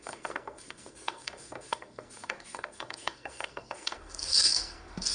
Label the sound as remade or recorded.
remade